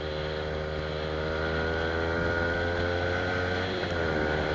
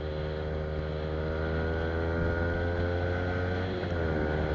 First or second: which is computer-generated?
first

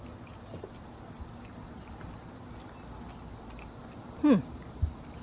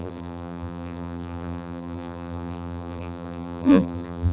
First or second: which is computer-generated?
second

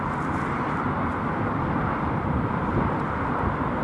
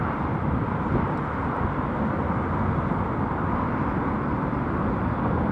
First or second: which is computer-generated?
first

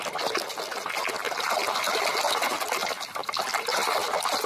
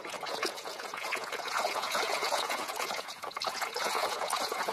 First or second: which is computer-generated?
second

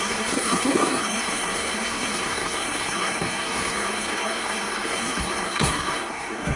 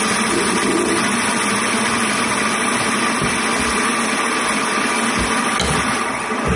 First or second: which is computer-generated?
first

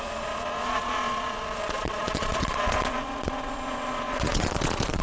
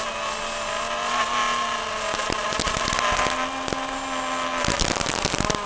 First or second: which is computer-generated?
first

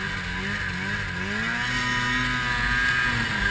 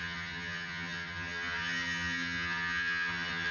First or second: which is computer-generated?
second